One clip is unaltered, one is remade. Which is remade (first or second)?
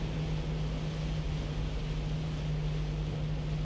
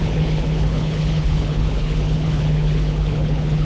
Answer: second